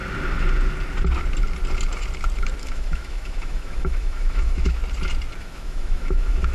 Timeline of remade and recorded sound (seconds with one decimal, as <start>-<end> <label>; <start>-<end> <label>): 0.0-2.6 recorded; 2.6-4.8 remade; 4.8-5.4 recorded; 5.4-6.5 remade